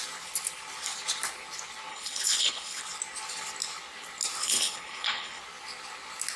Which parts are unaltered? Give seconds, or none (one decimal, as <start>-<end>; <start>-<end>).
0.0-1.9; 2.8-4.4; 5.4-6.4